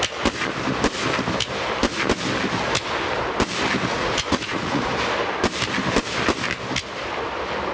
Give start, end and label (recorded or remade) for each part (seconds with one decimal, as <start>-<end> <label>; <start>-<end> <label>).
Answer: 0.0-3.9 recorded; 3.9-4.9 remade; 4.9-7.7 recorded